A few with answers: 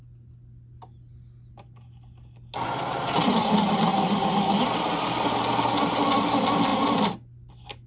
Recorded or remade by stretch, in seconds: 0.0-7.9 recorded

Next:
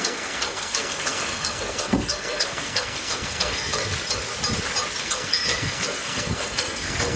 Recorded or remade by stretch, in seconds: 0.0-3.8 remade; 3.8-5.0 recorded; 5.0-7.2 remade

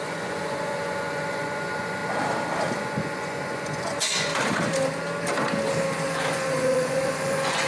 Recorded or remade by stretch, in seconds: 0.0-2.0 remade; 2.0-2.8 recorded; 2.8-4.3 remade; 4.3-6.0 recorded; 6.0-7.7 remade

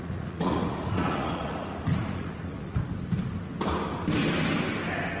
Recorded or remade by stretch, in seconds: 0.0-2.9 remade; 2.9-5.2 recorded